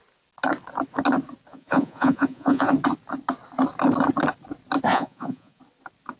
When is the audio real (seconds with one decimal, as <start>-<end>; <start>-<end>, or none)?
0.0-1.5; 2.7-4.9; 5.6-6.2